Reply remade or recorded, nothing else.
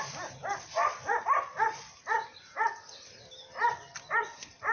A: recorded